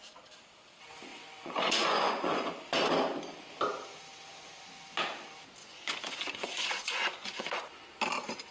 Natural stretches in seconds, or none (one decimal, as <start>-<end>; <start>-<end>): 0.0-1.1; 2.5-5.6; 7.6-8.5